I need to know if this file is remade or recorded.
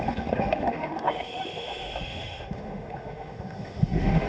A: remade